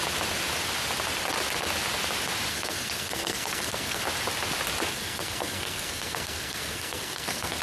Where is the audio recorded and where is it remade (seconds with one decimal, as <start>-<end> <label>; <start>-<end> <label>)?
0.0-2.5 recorded; 2.5-4.0 remade; 4.0-4.9 recorded; 4.9-7.6 remade

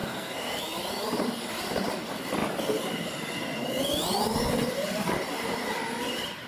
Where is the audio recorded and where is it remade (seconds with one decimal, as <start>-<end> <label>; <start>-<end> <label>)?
0.0-0.6 remade; 0.6-6.5 recorded

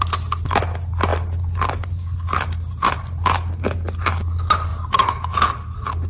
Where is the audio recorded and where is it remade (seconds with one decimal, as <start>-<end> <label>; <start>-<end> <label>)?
0.0-6.1 recorded

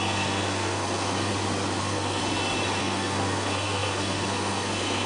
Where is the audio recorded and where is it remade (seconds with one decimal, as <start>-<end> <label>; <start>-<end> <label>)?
0.0-1.3 remade; 1.3-1.8 recorded; 1.8-2.2 remade; 2.2-2.8 recorded; 2.8-5.1 remade